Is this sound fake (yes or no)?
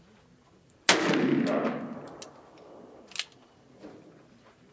no